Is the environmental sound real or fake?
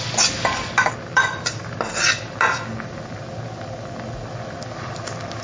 real